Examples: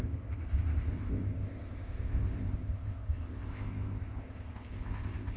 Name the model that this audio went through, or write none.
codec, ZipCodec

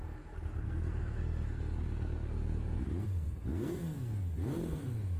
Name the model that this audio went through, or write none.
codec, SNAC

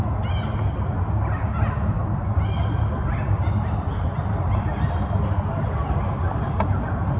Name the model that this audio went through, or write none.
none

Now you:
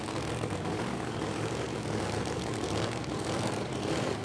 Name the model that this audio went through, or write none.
codec, DAC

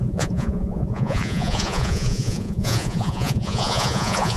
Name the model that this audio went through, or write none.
vocoder, Vocos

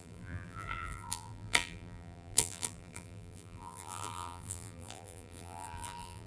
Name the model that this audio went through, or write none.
vocoder, BigVGAN v2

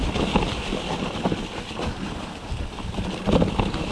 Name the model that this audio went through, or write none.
none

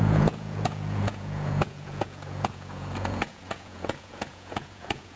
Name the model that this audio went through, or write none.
vocoder, Vocos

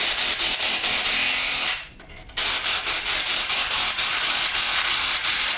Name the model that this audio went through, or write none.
none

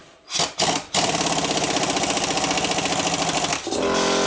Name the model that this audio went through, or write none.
none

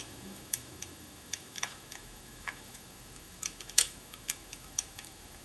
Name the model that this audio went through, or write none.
autoencoder, DAC-VAE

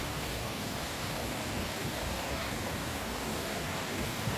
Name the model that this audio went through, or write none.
codec, DAC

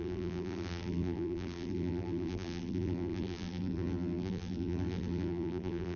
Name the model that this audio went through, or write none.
vocoder, BigVGAN v2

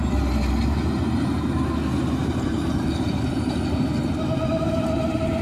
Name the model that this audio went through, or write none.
none